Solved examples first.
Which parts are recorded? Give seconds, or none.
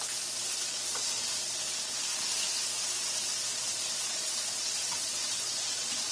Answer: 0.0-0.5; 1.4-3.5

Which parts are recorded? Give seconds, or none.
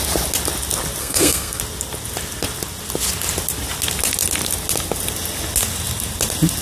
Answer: 0.0-1.0; 1.6-6.6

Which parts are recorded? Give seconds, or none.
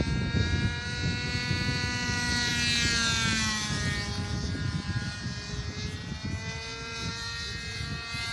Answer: 0.0-8.3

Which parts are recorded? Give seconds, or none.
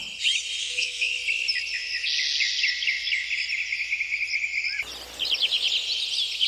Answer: 0.0-0.6; 1.1-6.5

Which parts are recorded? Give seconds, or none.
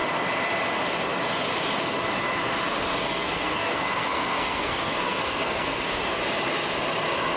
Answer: 0.0-3.0; 6.2-7.4